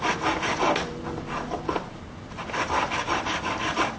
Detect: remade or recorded recorded